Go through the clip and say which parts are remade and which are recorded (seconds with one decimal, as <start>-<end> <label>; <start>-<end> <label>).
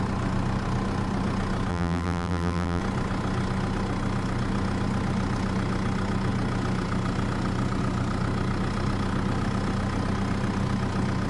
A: 0.0-1.7 recorded; 1.7-2.8 remade; 2.8-11.3 recorded